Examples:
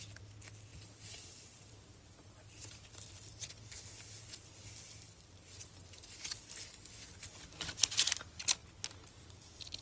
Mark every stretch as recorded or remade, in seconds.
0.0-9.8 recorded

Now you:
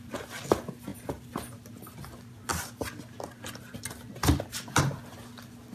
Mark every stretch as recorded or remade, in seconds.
0.0-5.7 recorded

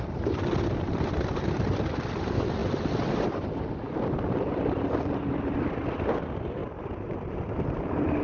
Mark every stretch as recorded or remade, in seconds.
0.0-6.6 remade; 6.6-7.5 recorded; 7.5-8.2 remade